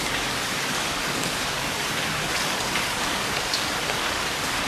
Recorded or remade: remade